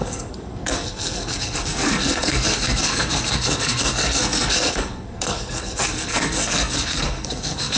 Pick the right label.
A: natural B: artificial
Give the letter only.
B